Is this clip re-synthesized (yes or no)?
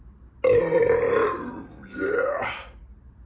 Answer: no